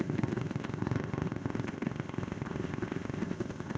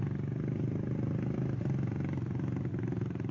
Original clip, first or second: second